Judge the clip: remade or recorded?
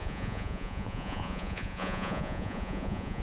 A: remade